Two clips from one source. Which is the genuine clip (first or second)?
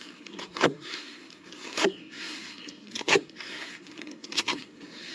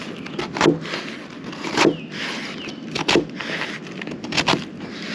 second